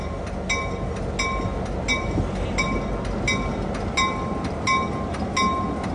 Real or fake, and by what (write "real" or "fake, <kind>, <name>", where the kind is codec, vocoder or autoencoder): real